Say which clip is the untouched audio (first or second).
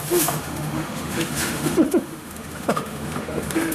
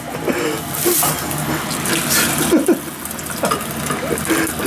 second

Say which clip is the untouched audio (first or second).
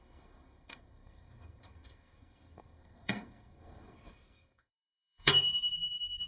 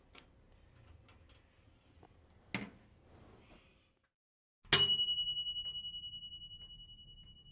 second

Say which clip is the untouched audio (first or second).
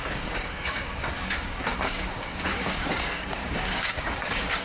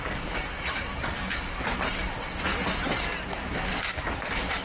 second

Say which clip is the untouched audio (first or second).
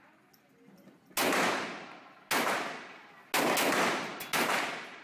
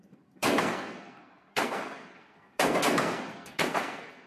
first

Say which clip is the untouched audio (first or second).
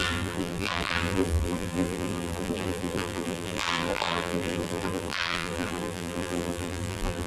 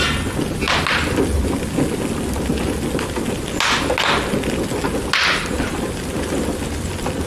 second